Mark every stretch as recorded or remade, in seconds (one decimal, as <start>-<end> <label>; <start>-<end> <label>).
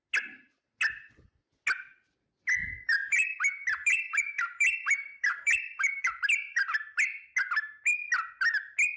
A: 0.0-2.6 recorded; 2.6-7.0 remade; 7.0-9.0 recorded